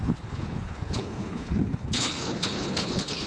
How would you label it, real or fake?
fake